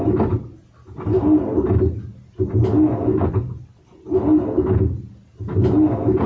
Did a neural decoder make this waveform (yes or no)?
no